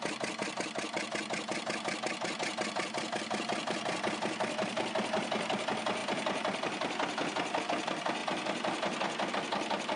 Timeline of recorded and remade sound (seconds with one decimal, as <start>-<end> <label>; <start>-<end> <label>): 0.0-10.0 recorded